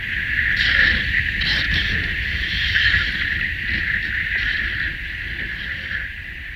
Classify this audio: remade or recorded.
recorded